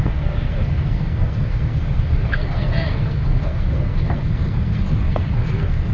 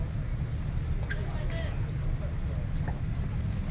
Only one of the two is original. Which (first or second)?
second